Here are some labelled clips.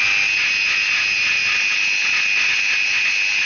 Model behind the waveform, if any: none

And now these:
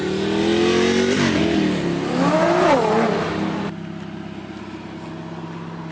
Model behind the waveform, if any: none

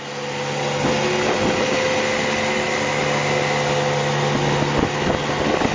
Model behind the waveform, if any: none